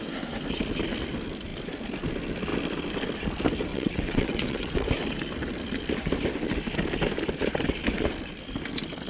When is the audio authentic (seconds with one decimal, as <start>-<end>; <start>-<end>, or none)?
0.0-3.7; 4.9-9.1